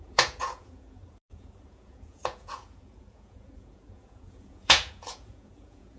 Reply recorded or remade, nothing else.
remade